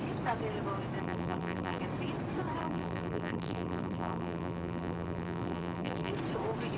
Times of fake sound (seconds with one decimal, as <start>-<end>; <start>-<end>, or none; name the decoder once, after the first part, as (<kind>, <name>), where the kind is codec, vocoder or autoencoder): 1.0-1.8 (vocoder, BigVGAN v2); 2.6-6.1

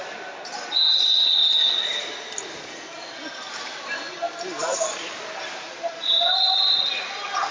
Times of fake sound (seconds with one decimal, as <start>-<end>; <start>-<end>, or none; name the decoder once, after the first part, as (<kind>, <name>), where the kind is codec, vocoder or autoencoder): 4.6-6.4 (vocoder, BigVGAN v2)

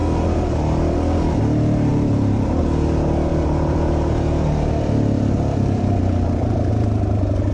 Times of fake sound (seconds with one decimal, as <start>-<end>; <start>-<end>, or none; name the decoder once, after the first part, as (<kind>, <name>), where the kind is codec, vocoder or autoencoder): 1.9-2.6 (vocoder, BigVGAN v2); 3.3-6.7